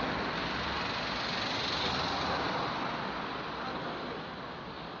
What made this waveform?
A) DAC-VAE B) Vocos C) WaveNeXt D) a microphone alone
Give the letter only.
D